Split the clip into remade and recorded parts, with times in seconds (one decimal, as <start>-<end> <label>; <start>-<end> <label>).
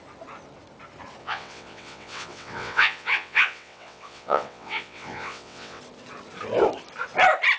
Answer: 0.0-1.2 recorded; 1.2-5.8 remade; 5.8-7.6 recorded